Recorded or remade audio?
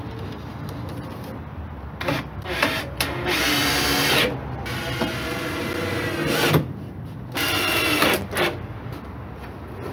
recorded